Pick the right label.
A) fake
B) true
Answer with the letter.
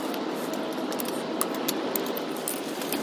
B